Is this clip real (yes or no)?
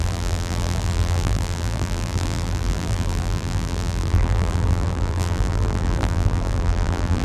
no